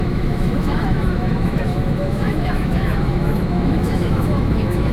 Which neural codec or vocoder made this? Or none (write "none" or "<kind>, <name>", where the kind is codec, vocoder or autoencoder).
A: autoencoder, DAC-VAE